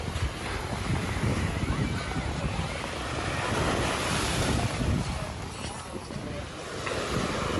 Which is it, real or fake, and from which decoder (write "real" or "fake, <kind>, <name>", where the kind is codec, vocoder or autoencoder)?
real